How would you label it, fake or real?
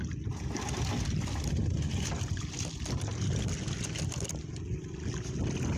real